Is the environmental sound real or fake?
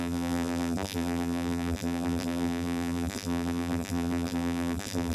fake